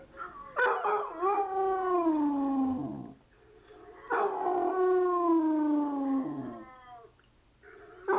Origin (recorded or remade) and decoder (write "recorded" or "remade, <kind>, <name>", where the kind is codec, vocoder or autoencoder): recorded